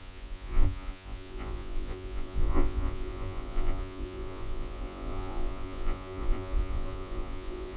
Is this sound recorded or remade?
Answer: remade